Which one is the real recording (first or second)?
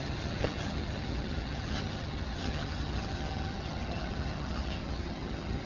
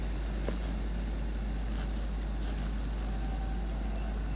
second